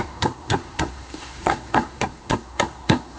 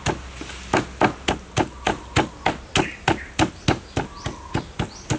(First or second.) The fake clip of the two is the first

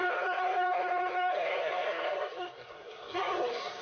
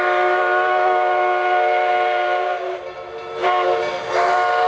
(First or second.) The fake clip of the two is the first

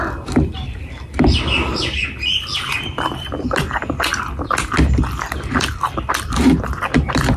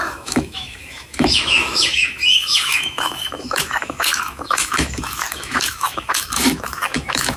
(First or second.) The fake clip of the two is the second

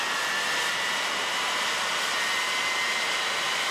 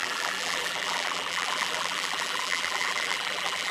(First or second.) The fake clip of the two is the second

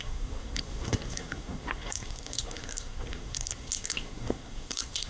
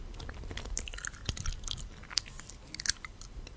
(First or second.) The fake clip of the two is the first